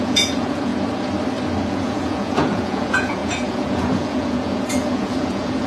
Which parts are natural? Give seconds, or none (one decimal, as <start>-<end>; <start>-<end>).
0.7-1.7